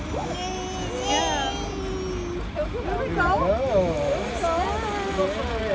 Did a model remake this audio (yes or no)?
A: no